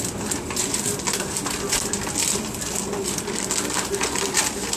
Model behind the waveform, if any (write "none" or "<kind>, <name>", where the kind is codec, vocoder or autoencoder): none